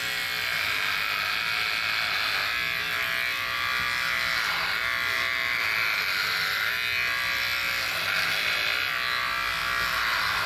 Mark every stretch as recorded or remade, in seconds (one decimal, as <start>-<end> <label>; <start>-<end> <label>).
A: 0.0-10.5 recorded